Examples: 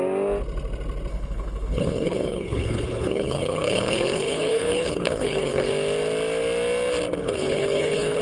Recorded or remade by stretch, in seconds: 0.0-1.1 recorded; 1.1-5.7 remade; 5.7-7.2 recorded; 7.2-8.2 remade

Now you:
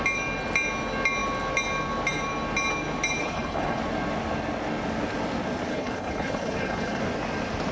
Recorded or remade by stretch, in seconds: 0.0-3.2 recorded; 3.2-3.8 remade; 3.8-5.7 recorded; 5.7-7.0 remade; 7.0-7.7 recorded

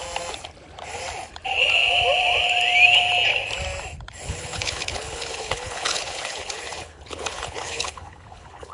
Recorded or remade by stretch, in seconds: 0.0-4.2 recorded; 4.2-8.7 remade

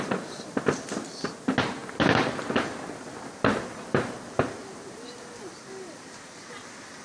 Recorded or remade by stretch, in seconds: 0.0-7.0 recorded

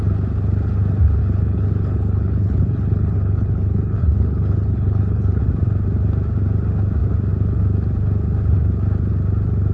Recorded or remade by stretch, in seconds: 0.0-1.2 recorded; 1.2-5.4 remade; 5.4-9.7 recorded

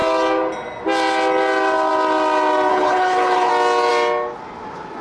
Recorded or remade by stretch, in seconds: 0.0-2.7 recorded; 2.7-3.5 remade; 3.5-5.0 recorded

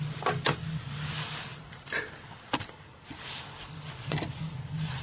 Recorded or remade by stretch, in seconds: 0.0-5.0 recorded